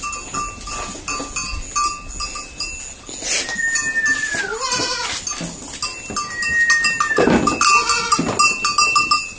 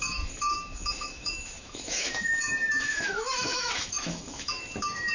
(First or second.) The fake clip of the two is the second